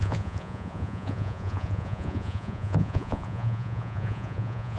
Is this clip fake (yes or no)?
yes